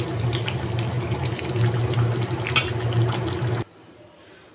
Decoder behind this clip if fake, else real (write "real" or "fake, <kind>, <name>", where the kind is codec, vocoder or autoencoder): real